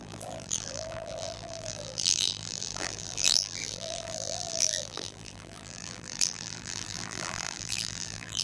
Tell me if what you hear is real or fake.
fake